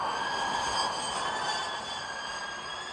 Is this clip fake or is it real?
real